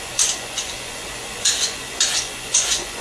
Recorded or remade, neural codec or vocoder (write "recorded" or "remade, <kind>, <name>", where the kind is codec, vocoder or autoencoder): remade, vocoder, Vocos